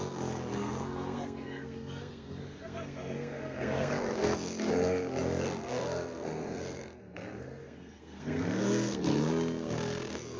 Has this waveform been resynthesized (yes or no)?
yes